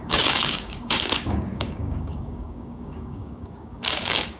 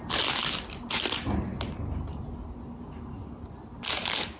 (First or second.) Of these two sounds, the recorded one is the second